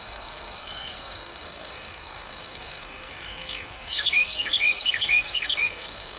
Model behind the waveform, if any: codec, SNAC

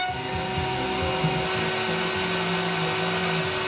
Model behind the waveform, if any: none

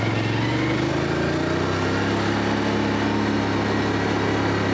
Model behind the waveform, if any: none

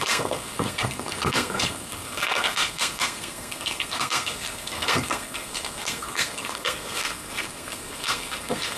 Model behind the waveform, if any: codec, SNAC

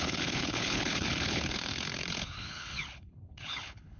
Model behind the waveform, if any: codec, HILCodec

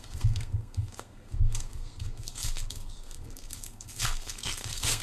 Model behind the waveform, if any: codec, SNAC